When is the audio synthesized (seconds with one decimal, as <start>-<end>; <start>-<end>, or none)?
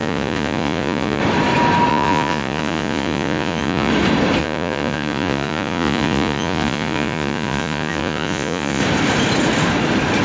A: 0.0-1.2; 1.9-3.9; 4.4-8.8